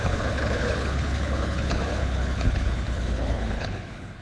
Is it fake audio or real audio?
fake